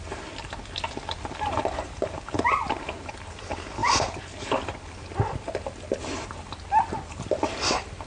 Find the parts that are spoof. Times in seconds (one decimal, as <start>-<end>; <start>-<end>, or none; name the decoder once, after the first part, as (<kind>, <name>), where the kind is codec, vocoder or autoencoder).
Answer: none